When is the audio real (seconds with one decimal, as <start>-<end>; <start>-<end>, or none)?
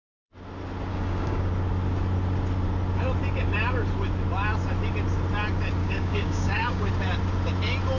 0.0-0.9; 1.5-5.8; 6.9-8.0